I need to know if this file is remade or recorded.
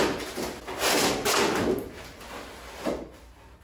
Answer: recorded